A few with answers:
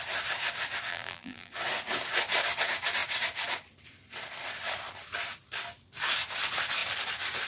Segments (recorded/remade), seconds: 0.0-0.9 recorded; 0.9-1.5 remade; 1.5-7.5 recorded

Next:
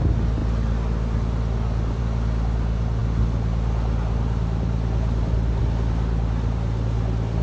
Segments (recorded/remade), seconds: 0.0-7.4 recorded

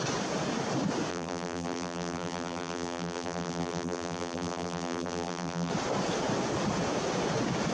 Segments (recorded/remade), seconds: 0.0-1.1 recorded; 1.1-5.7 remade; 5.7-7.7 recorded